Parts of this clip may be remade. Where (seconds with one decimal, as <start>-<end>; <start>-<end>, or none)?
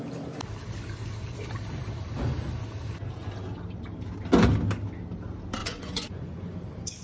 5.6-6.6